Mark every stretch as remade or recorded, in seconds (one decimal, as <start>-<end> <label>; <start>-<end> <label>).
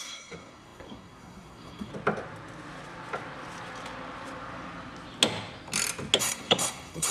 0.0-1.9 remade; 1.9-6.2 recorded; 6.2-7.1 remade